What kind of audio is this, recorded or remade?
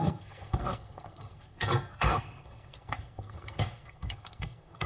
remade